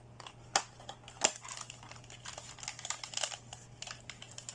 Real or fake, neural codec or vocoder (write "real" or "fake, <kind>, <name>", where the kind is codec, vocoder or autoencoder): real